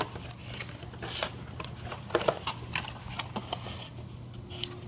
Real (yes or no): yes